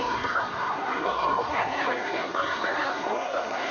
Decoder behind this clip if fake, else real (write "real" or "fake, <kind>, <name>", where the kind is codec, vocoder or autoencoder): fake, codec, SNAC